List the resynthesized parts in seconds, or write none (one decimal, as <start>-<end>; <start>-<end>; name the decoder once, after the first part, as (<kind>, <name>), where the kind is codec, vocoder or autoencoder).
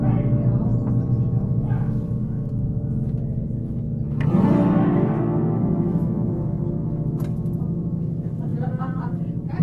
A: 2.2-2.8 (codec, SNAC); 5.2-6.3